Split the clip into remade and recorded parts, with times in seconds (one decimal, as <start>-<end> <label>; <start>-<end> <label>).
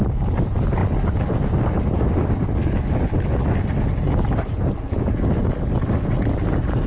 0.0-6.9 recorded